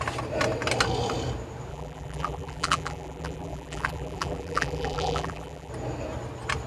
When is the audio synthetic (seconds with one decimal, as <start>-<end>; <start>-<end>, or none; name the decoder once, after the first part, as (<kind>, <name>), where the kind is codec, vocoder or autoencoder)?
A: 1.7-5.7 (vocoder, BigVGAN v2)